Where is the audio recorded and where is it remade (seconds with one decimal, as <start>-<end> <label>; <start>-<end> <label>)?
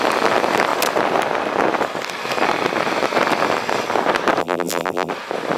0.0-4.4 recorded; 4.4-5.1 remade; 5.1-5.6 recorded